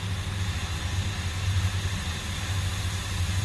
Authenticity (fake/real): real